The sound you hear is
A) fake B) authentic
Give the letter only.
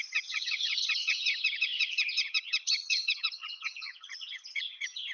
A